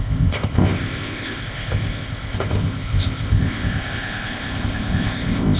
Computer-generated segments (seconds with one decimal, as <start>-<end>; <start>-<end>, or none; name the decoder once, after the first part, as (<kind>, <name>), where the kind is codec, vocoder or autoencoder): 0.0-5.6 (codec, ZipCodec)